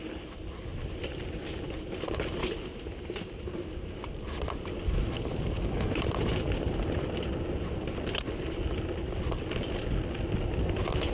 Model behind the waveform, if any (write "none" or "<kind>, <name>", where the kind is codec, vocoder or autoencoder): none